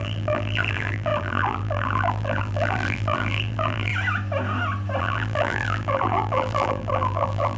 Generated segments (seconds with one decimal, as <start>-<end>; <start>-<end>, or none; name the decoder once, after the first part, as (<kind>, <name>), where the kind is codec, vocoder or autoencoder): 0.0-3.9 (vocoder, BigVGAN v2); 5.0-7.6